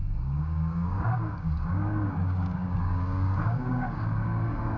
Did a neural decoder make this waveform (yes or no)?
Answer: yes